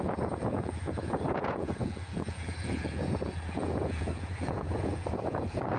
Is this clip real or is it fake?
fake